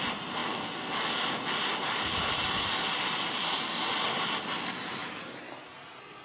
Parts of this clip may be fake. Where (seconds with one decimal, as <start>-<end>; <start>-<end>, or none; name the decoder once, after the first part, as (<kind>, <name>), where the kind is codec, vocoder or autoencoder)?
none